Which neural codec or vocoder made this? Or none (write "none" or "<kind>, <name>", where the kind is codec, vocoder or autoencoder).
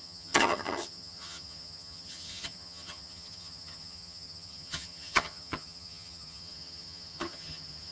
vocoder, HiFi-GAN